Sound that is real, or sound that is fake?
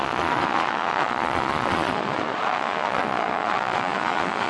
fake